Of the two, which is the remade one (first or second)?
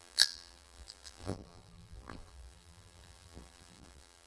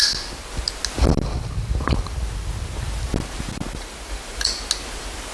first